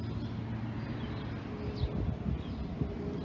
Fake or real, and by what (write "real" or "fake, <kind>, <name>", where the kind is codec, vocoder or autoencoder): real